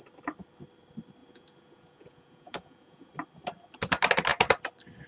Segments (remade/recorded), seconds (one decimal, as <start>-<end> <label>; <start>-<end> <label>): 0.0-1.2 recorded; 1.2-3.1 remade; 3.1-5.1 recorded